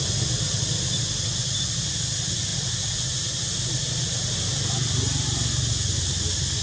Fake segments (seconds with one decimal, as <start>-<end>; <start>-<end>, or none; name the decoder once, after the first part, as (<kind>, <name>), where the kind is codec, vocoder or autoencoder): none